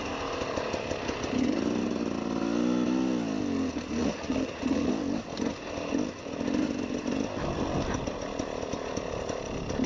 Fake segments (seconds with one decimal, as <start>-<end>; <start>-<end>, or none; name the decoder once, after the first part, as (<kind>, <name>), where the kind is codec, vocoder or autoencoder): 4.0-4.9 (vocoder, Vocos)